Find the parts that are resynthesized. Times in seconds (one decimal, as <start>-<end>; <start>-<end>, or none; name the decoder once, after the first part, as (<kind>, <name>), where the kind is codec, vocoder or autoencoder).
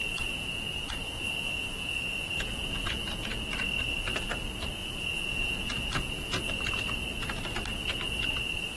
0.0-3.4 (vocoder, Vocos); 4.8-6.4